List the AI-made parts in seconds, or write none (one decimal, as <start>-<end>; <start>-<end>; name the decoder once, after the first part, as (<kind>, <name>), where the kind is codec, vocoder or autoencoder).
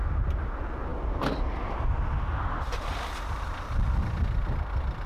none